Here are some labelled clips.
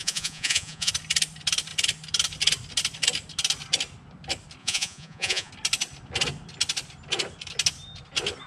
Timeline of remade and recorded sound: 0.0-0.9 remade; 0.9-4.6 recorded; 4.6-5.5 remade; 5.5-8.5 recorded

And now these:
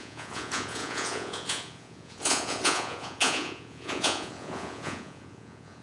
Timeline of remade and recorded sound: 0.0-5.8 remade

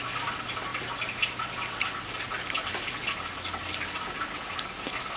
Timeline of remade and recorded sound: 0.0-5.2 recorded

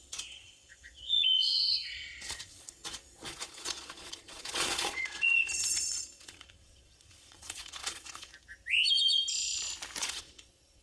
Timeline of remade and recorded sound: 0.0-8.3 remade; 8.3-10.0 recorded; 10.0-10.8 remade

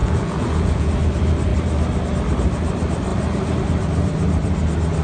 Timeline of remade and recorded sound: 0.0-0.9 remade; 0.9-5.0 recorded